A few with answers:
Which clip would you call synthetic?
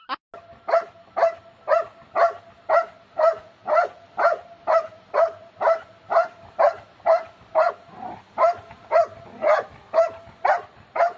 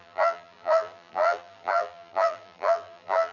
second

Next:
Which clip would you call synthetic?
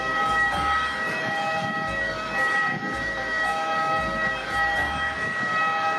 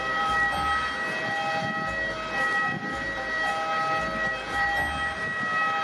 first